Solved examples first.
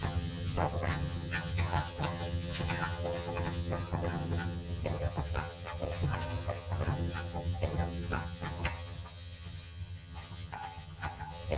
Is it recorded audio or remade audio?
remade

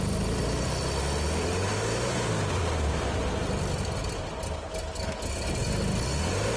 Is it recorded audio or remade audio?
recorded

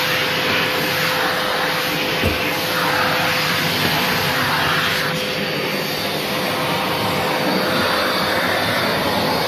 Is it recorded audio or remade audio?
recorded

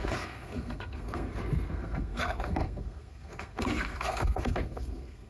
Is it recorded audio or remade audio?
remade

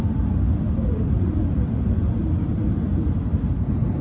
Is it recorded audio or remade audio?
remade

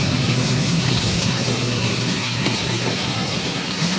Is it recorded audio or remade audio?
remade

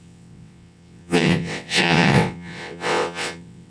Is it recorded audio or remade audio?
remade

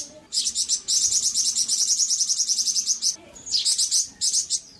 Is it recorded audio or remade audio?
recorded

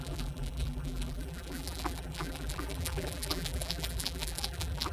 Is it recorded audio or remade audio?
remade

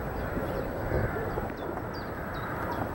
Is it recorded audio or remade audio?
recorded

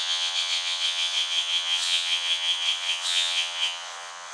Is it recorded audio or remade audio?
remade